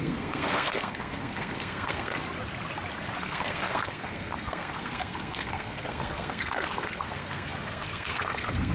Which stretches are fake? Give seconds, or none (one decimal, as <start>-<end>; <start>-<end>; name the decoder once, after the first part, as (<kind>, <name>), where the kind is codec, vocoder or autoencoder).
0.0-2.2 (codec, SNAC); 3.2-8.7